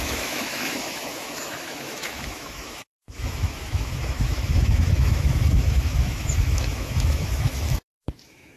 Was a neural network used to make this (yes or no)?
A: yes